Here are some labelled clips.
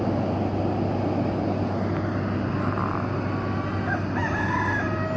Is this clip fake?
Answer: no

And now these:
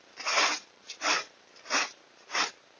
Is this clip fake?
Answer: yes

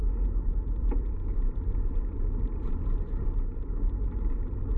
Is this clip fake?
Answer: yes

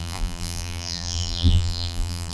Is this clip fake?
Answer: yes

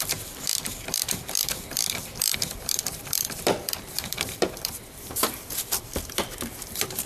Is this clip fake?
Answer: yes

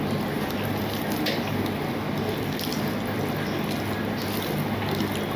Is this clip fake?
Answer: no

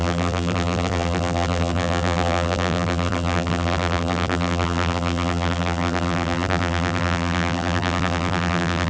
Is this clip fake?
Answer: yes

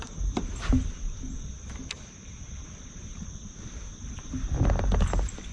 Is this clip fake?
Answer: no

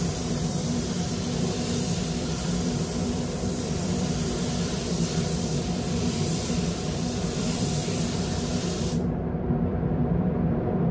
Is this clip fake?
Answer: yes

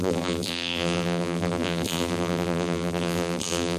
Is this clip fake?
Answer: yes